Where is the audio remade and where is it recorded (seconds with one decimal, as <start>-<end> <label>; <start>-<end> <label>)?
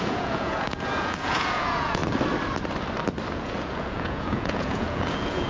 0.0-2.0 remade; 2.0-3.3 recorded; 3.3-5.5 remade